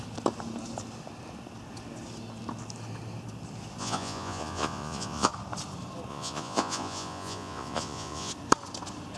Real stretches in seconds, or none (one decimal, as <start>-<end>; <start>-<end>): 0.0-3.8; 5.3-6.1; 8.3-9.2